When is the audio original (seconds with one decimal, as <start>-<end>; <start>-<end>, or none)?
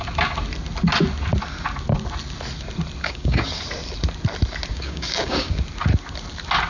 0.0-3.0; 3.6-4.7; 5.6-6.7